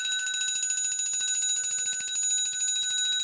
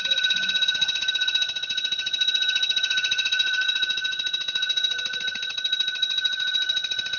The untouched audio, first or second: first